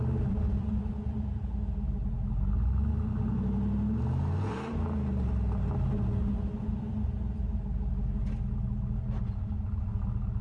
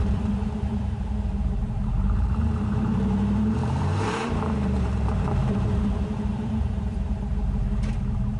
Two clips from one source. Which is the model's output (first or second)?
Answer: second